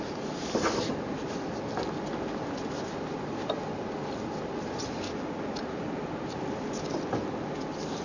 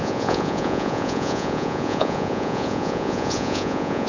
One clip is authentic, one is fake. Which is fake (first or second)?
second